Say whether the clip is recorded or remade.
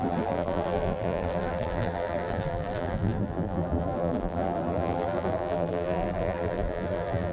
remade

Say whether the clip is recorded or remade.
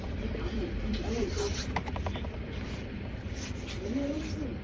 remade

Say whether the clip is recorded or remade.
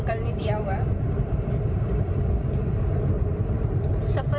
remade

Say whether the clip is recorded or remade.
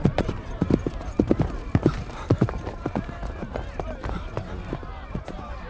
remade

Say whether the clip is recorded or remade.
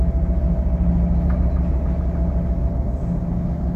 recorded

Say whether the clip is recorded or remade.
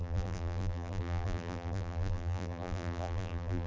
remade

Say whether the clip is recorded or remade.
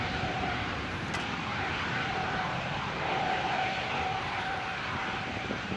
remade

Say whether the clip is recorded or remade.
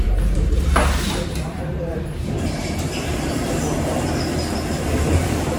remade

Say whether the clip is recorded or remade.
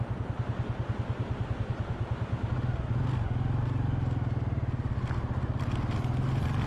recorded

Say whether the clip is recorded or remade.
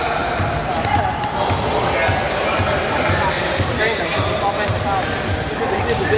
remade